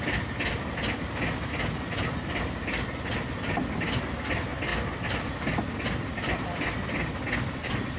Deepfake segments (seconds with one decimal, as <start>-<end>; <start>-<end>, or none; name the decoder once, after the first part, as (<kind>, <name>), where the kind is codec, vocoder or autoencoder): none